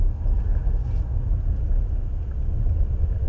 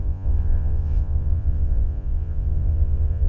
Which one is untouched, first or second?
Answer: first